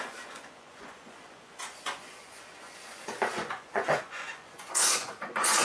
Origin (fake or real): fake